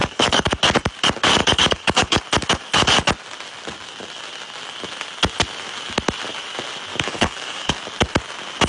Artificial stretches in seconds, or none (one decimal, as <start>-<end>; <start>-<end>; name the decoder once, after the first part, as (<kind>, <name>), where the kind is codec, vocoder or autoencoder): 0.0-0.6 (codec, DAC); 1.4-2.2; 6.9-7.7